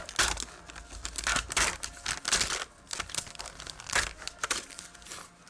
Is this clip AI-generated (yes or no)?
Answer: no